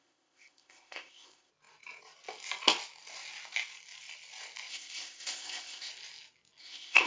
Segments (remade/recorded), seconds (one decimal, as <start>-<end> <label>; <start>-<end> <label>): 0.0-1.5 remade; 1.5-4.7 recorded; 4.7-5.9 remade; 5.9-6.6 recorded; 6.6-7.1 remade